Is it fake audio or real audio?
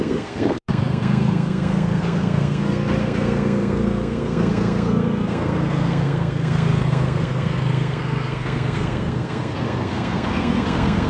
fake